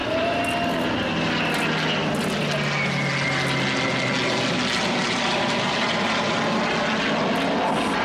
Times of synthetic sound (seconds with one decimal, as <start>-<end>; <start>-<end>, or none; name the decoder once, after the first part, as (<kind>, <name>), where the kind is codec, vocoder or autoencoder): none